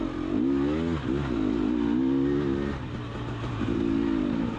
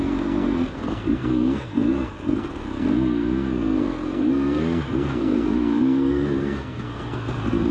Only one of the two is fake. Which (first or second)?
second